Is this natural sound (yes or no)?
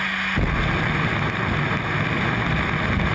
yes